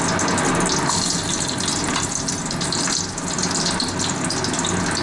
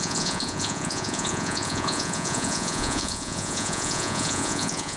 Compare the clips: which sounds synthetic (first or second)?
second